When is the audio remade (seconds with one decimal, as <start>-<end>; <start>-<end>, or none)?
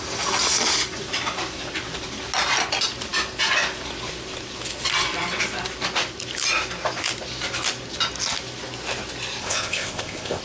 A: 9.4-10.4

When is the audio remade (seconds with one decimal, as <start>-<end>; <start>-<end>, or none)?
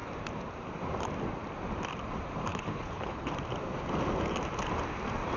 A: 2.5-3.3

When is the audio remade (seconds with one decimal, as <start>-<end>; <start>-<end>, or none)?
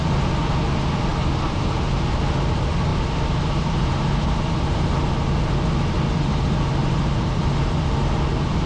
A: 1.1-2.2; 2.9-4.9; 6.8-7.6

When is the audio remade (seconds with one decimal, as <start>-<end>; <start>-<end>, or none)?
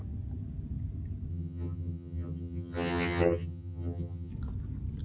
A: 1.3-4.3